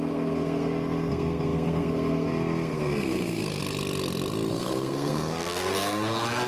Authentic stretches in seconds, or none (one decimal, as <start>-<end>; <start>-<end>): 3.6-4.5